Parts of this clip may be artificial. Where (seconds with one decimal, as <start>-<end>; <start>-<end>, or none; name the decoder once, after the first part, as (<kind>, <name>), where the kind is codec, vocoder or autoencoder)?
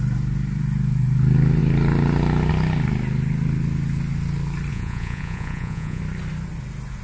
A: 4.7-6.0 (vocoder, Vocos)